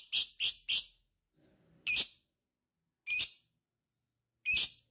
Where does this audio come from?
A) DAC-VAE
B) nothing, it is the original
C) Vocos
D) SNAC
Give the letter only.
B